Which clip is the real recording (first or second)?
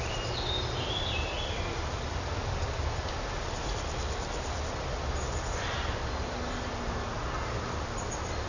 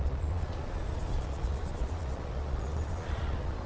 first